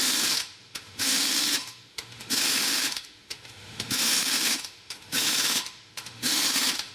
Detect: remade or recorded remade